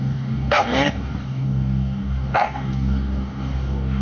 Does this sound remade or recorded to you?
remade